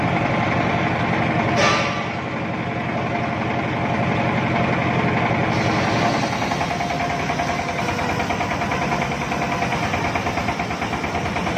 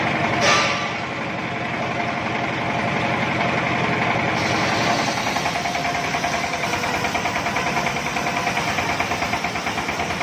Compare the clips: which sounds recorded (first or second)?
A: first